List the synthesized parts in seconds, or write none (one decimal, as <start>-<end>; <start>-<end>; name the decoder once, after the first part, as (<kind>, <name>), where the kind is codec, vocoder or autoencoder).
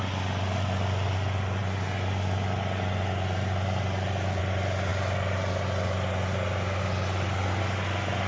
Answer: none